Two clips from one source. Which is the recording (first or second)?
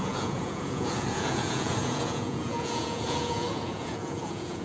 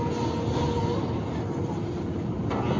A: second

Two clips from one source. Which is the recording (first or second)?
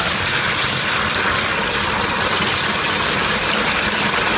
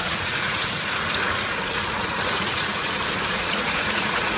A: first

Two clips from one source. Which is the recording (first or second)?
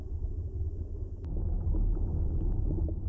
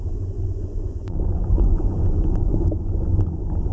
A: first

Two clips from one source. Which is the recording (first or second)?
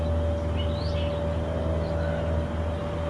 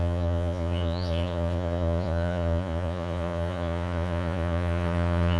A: first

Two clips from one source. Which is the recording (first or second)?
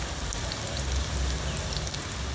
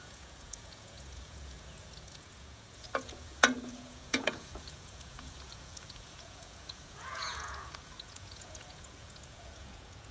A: first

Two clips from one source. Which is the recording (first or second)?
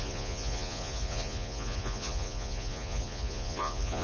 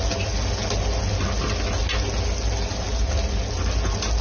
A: second